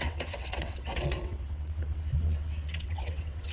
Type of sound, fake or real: fake